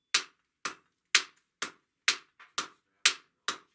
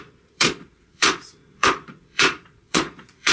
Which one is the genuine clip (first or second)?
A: first